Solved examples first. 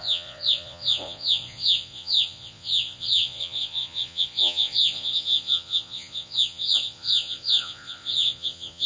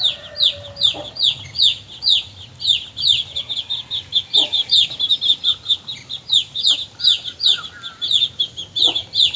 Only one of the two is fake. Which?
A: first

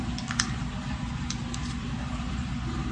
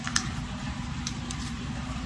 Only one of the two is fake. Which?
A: second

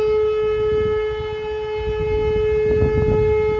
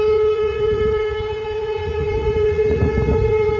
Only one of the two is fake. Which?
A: second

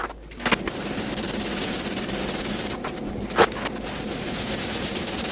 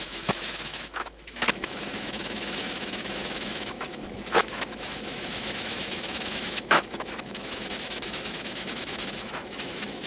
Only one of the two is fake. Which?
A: second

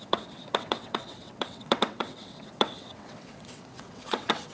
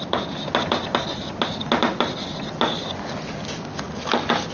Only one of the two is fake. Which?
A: first